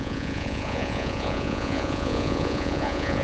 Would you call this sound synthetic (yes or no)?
yes